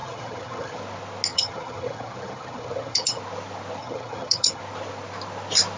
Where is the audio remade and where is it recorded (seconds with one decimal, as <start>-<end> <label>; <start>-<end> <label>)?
0.0-0.8 remade; 0.8-1.3 recorded; 1.3-3.2 remade; 3.2-3.8 recorded; 3.8-4.6 remade; 4.6-5.8 recorded